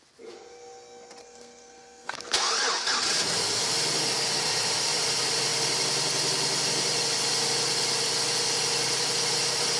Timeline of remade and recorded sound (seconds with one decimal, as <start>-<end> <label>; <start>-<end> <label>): 0.0-1.2 recorded; 1.2-2.2 remade; 2.2-9.8 recorded